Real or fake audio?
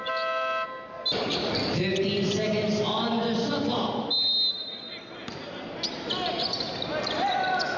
real